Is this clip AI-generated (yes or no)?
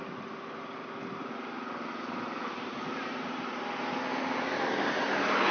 no